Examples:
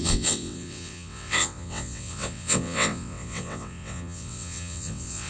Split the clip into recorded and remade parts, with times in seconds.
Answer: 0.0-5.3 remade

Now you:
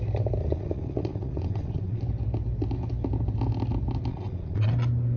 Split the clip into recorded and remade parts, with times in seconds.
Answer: 0.0-0.4 recorded; 0.4-2.0 remade; 2.0-4.1 recorded; 4.1-4.7 remade; 4.7-5.2 recorded

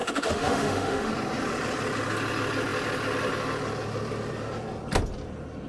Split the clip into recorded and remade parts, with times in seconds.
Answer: 0.0-1.1 remade; 1.1-5.7 recorded

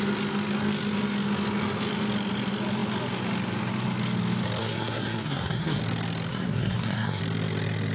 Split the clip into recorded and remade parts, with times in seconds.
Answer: 0.0-4.6 recorded; 4.6-5.8 remade; 5.8-6.3 recorded; 6.3-7.2 remade; 7.2-7.9 recorded

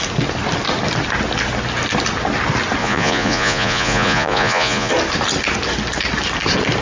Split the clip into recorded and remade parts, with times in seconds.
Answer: 0.0-2.8 recorded; 2.8-4.9 remade; 4.9-6.8 recorded